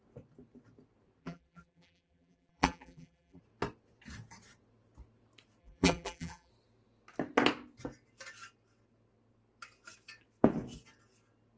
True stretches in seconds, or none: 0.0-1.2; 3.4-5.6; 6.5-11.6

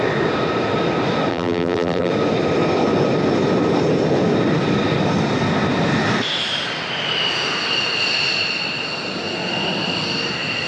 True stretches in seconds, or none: 0.0-1.3; 2.1-10.7

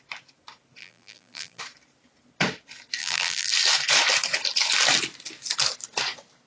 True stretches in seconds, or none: 0.0-0.8; 1.6-3.0; 3.5-6.5

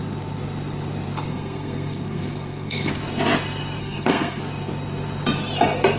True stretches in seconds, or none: 0.0-1.3; 2.9-3.8; 4.4-6.0

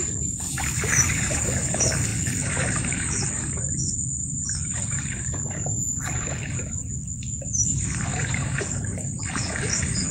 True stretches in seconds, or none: none